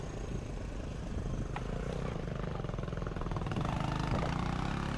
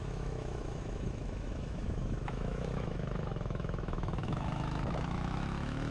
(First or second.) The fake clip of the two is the second